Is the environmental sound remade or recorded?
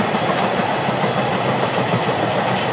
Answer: recorded